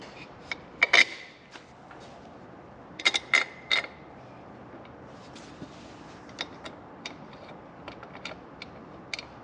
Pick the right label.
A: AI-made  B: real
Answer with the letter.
B